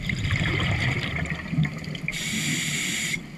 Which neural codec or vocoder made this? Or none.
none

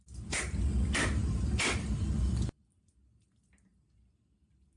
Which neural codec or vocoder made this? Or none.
none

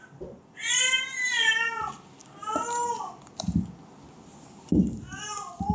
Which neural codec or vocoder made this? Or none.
none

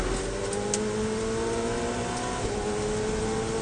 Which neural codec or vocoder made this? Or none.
none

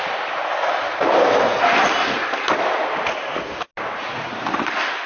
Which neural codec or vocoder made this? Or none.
none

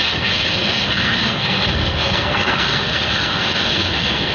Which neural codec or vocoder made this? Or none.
codec, SNAC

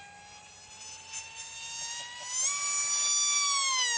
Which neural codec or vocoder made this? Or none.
none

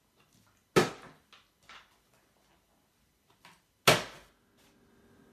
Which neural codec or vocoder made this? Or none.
none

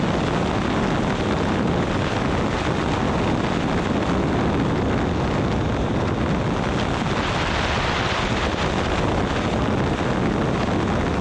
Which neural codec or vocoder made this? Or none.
none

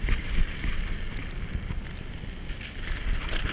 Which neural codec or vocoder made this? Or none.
none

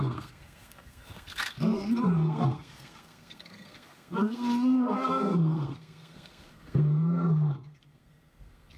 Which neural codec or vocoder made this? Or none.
codec, SNAC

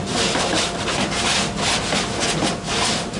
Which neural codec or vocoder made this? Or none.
none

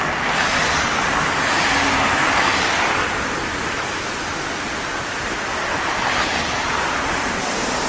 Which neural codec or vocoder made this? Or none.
none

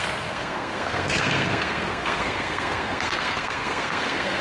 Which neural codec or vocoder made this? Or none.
codec, SNAC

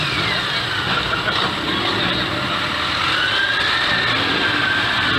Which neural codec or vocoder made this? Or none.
none